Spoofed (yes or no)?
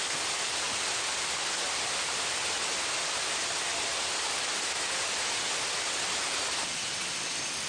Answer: no